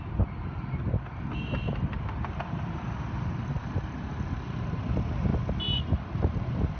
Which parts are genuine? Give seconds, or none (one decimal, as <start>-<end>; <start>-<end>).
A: 0.0-6.8